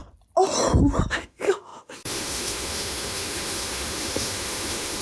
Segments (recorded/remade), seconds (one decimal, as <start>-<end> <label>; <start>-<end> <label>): 0.0-1.1 recorded; 1.1-5.0 remade